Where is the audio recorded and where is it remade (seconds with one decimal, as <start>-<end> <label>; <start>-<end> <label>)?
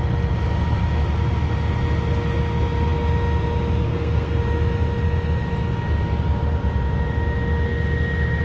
0.0-3.8 recorded; 3.8-4.4 remade; 4.4-8.4 recorded